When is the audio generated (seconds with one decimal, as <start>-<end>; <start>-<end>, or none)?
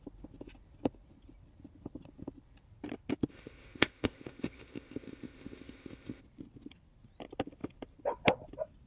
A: 3.3-6.2